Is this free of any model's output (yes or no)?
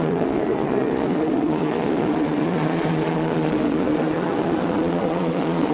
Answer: no